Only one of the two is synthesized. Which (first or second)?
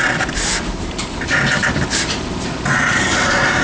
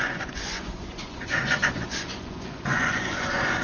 second